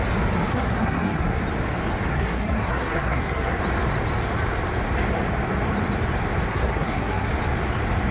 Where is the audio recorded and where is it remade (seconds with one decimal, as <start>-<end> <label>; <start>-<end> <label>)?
0.0-0.5 recorded; 0.5-1.4 remade; 1.4-2.1 recorded; 2.1-3.6 remade; 3.6-6.5 recorded; 6.5-7.3 remade; 7.3-8.1 recorded

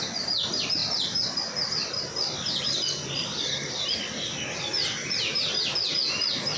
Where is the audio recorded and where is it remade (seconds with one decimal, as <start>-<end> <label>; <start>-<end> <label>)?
0.0-6.6 recorded